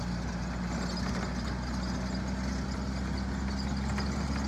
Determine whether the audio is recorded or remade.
recorded